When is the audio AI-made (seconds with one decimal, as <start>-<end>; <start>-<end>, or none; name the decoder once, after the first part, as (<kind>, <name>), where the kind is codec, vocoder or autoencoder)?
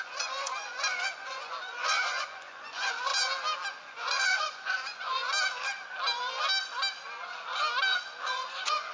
0.0-3.1 (vocoder, Vocos); 3.8-5.2; 8.2-8.9